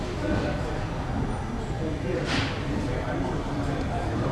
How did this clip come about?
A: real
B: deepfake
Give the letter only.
A